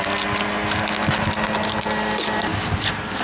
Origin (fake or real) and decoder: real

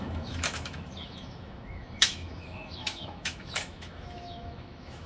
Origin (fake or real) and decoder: fake, autoencoder, DAC-VAE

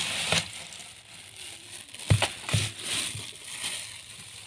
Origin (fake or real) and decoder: real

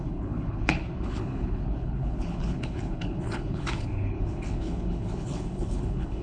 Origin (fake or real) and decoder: fake, codec, HILCodec